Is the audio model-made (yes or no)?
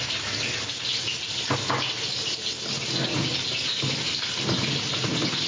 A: no